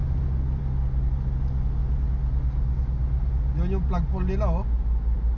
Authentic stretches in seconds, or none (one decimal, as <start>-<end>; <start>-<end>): 0.0-5.4